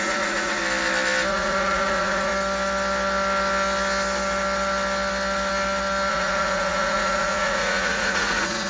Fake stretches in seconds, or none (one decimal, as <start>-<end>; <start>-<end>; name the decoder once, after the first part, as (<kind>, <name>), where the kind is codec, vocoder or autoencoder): 0.0-0.6 (vocoder, Vocos); 1.3-2.3; 6.1-8.7